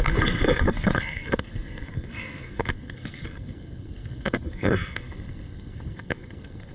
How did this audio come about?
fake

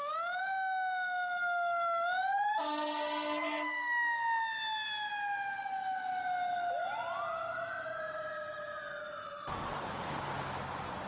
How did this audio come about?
real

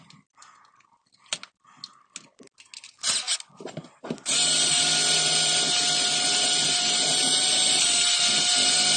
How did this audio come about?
real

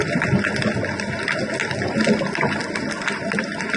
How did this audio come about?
real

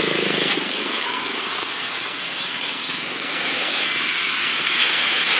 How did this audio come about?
fake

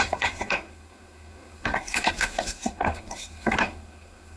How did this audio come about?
fake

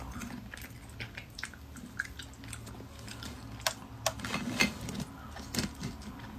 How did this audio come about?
real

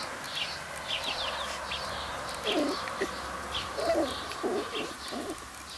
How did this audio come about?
real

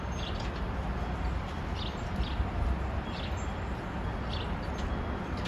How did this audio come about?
real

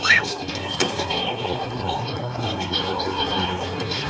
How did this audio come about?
fake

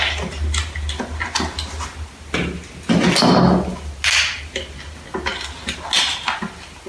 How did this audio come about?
real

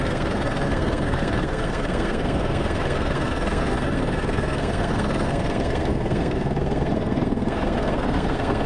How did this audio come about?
fake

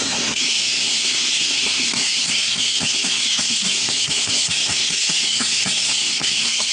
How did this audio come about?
fake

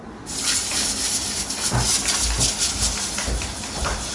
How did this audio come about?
real